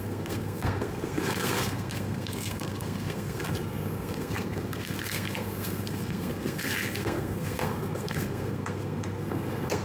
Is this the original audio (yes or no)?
no